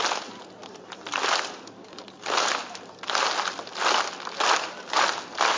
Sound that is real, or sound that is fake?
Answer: real